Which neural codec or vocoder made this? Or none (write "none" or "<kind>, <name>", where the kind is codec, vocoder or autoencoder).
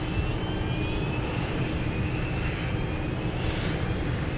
none